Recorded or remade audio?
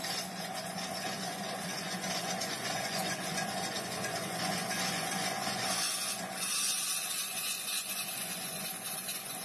remade